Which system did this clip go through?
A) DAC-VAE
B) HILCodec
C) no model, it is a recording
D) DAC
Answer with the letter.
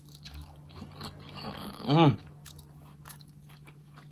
D